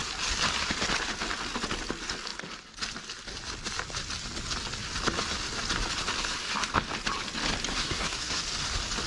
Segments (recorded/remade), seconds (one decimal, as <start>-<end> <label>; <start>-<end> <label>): 0.0-7.7 recorded; 7.7-8.4 remade; 8.4-9.1 recorded

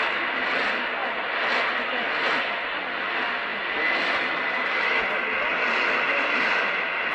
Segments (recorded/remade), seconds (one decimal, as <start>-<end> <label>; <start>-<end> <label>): 0.0-7.1 recorded

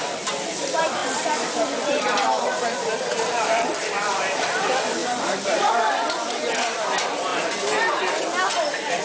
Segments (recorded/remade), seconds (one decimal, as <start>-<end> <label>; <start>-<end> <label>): 0.0-7.3 remade; 7.3-8.5 recorded; 8.5-9.0 remade

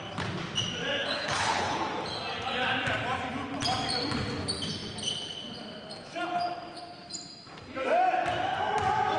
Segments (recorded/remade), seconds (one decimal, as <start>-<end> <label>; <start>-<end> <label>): 0.0-1.0 recorded; 1.0-1.8 remade; 1.8-9.2 recorded

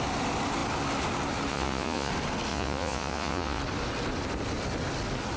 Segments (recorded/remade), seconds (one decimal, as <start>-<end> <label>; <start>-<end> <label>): 0.0-1.5 recorded; 1.5-2.1 remade; 2.1-2.5 recorded; 2.5-3.6 remade; 3.6-5.4 recorded

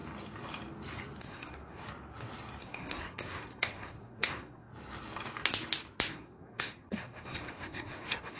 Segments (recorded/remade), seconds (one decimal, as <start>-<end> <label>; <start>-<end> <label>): 0.0-1.2 recorded; 1.2-1.8 remade; 1.8-2.6 recorded; 2.6-4.7 remade; 4.7-6.1 recorded; 6.1-8.4 remade

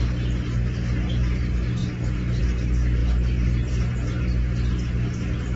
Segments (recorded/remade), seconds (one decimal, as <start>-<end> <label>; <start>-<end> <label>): 0.0-5.6 recorded

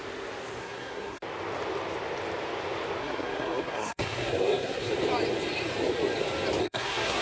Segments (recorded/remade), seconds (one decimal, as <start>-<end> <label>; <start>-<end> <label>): 0.0-0.6 recorded; 0.6-1.2 remade; 1.2-3.0 recorded; 3.0-4.9 remade; 4.9-6.6 recorded; 6.6-7.2 remade